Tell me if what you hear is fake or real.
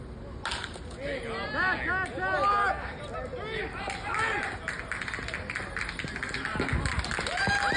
real